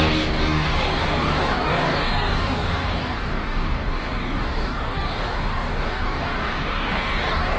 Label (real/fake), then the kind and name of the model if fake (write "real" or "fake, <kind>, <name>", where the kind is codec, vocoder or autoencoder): fake, codec, DAC